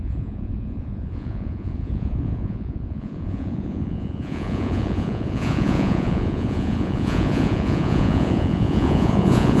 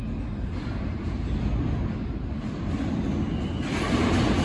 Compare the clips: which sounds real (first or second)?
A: second